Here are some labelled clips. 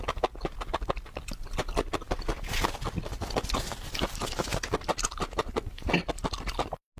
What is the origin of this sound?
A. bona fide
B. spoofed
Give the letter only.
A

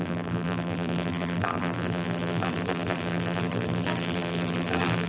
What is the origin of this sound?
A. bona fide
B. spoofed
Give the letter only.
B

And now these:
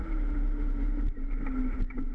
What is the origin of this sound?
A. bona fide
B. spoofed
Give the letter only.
B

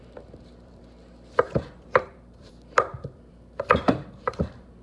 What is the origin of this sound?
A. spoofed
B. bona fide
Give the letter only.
A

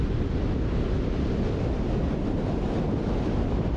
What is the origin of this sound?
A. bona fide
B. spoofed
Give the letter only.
A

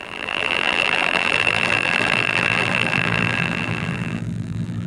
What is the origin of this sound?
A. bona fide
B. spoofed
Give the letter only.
B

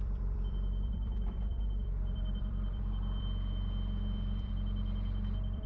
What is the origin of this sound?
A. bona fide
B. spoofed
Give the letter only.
B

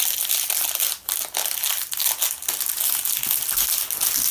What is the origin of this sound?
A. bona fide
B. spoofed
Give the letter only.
A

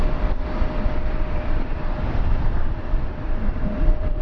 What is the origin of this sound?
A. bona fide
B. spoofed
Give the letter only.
B